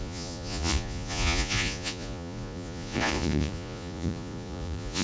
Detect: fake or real fake